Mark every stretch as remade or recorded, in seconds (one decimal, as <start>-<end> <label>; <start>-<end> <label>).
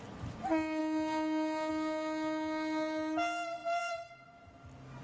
0.0-3.6 recorded; 3.6-4.1 remade; 4.1-5.0 recorded